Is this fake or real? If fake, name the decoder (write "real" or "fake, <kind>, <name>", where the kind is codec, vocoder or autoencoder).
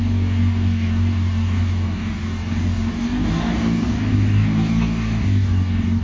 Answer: fake, codec, DAC